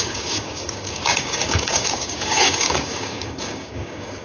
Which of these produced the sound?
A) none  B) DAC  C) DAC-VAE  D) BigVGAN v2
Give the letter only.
B